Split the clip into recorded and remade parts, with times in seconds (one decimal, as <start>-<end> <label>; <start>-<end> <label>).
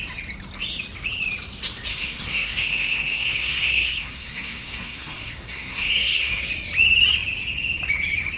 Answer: 0.0-1.9 recorded; 1.9-6.5 remade; 6.5-8.4 recorded